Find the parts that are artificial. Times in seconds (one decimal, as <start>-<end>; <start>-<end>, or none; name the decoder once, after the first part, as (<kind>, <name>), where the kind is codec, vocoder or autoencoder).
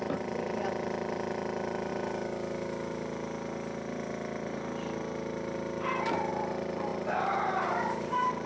0.0-1.9 (vocoder, BigVGAN v2); 6.3-8.5